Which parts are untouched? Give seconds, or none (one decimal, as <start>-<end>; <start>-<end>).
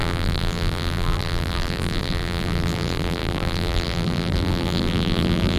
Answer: none